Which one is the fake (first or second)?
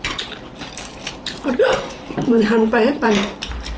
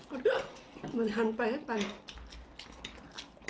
first